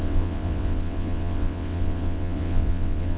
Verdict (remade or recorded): remade